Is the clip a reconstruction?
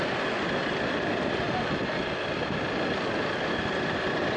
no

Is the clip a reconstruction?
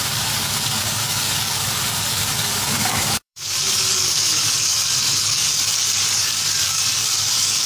yes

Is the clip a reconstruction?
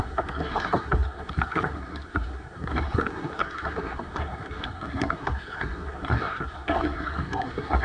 yes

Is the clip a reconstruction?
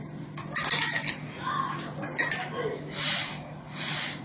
no